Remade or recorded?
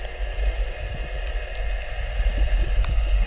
recorded